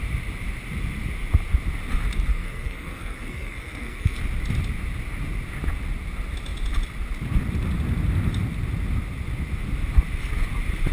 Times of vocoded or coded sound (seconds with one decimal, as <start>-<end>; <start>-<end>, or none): 2.3-4.2